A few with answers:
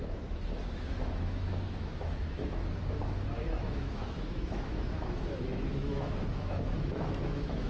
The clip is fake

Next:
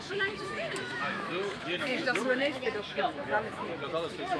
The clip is fake